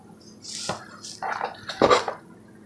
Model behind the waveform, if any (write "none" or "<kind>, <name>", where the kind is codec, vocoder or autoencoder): none